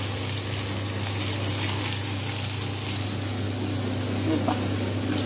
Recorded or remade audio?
recorded